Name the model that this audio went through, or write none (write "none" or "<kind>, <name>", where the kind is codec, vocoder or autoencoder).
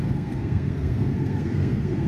codec, SNAC